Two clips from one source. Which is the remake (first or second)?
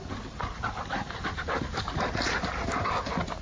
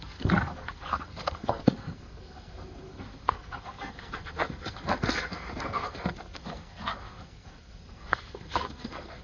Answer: second